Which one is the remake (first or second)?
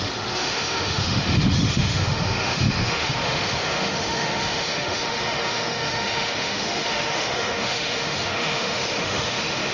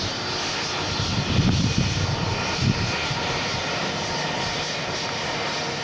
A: first